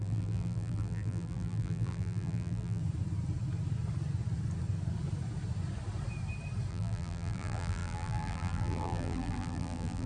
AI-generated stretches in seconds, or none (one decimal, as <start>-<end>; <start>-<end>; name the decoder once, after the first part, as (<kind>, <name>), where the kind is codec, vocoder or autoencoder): 0.0-2.8 (vocoder, BigVGAN v2); 6.7-10.1